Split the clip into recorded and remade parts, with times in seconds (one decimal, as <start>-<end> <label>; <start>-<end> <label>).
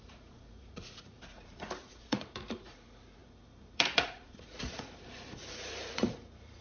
0.0-6.6 remade